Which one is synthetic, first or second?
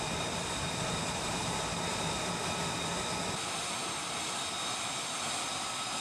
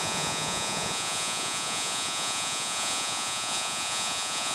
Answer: second